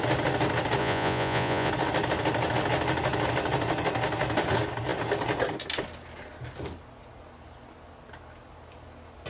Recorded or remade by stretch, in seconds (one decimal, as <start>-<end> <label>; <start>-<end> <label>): 0.0-0.8 recorded; 0.8-1.7 remade; 1.7-9.3 recorded